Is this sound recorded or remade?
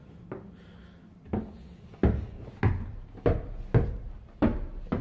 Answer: recorded